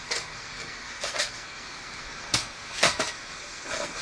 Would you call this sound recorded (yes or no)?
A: no